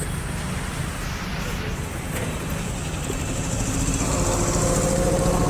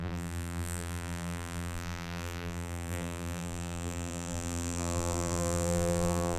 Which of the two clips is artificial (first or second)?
second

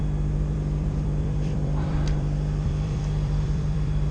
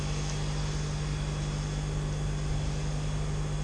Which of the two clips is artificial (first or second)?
first